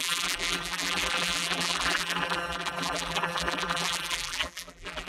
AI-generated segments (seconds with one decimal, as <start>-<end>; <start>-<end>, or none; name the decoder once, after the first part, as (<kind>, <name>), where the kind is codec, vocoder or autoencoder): 0.0-5.1 (vocoder, BigVGAN v2)